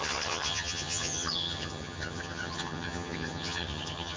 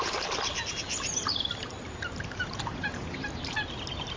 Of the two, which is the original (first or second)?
second